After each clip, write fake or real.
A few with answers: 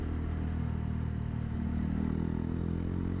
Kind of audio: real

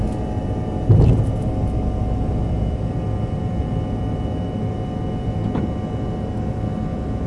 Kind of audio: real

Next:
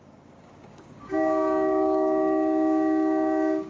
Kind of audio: fake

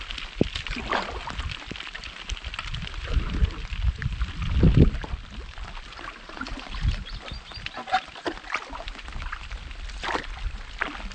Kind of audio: real